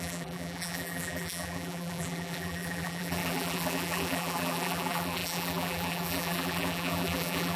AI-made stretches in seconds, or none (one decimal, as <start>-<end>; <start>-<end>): 0.0-7.6